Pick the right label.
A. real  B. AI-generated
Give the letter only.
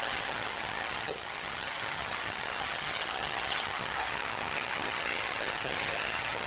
B